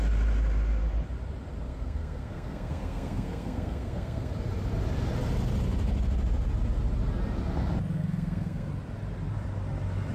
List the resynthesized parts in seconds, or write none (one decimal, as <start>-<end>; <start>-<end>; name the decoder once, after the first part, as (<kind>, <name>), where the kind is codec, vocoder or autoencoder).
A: 1.7-4.3 (codec, SNAC); 7.9-8.7